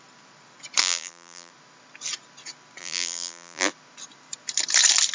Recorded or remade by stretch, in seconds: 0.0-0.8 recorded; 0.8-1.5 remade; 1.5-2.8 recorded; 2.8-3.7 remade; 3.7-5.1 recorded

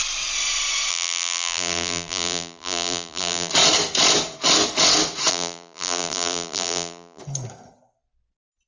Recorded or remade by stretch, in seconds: 0.0-0.9 recorded; 0.9-3.5 remade; 3.5-5.3 recorded; 5.3-7.2 remade; 7.2-8.7 recorded

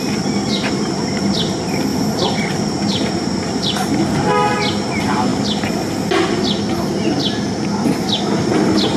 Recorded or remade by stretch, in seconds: 0.0-0.4 recorded; 0.4-1.3 remade; 1.3-1.9 recorded; 1.9-3.9 remade; 3.9-9.0 recorded

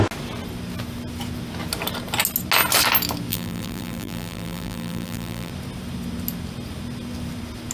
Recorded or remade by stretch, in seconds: 0.0-3.3 recorded; 3.3-5.5 remade; 5.5-7.7 recorded

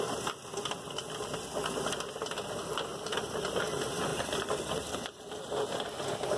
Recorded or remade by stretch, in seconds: 0.0-2.9 recorded; 2.9-3.6 remade; 3.6-4.1 recorded; 4.1-5.2 remade; 5.2-6.4 recorded